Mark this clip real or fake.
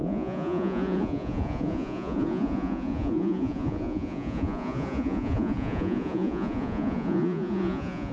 fake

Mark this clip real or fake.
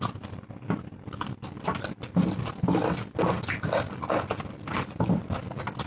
real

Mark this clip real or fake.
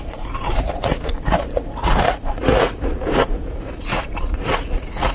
fake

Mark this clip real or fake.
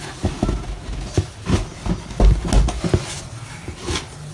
real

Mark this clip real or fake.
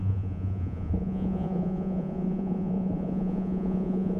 fake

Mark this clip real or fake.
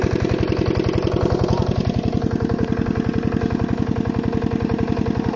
real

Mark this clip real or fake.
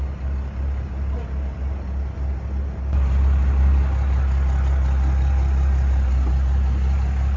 real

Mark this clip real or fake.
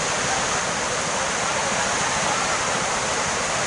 real